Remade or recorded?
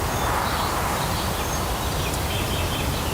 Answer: recorded